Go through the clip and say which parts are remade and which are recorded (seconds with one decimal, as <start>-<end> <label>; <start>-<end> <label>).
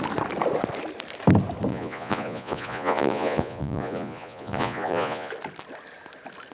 0.0-1.7 recorded; 1.7-5.3 remade; 5.3-6.5 recorded